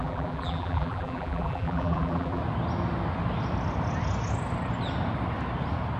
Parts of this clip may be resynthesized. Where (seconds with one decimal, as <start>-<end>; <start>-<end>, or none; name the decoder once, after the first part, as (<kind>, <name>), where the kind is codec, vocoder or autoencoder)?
0.0-2.4 (vocoder, BigVGAN v2)